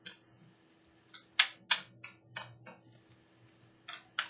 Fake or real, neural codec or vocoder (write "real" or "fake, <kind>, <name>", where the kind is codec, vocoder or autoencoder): real